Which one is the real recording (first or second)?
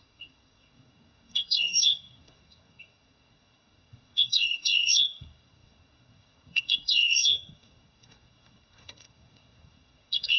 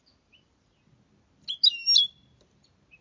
second